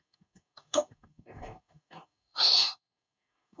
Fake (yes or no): yes